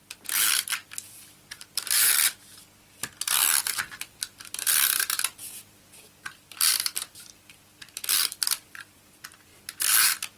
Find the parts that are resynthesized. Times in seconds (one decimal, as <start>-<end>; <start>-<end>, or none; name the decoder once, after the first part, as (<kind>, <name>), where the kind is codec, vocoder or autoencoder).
0.0-2.5 (vocoder, BigVGAN v2); 3.6-9.5; 10.0-10.4

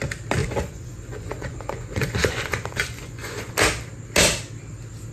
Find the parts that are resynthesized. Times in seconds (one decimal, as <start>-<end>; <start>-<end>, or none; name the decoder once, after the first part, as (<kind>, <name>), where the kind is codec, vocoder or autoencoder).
0.4-3.5 (vocoder, Vocos)

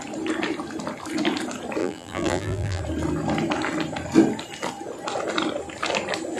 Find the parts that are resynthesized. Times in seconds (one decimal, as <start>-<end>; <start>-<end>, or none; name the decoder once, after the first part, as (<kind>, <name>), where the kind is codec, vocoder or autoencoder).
1.8-2.8 (vocoder, BigVGAN v2)